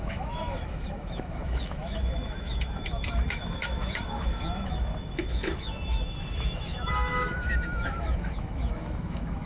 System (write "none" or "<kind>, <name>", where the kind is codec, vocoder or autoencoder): autoencoder, DAC-VAE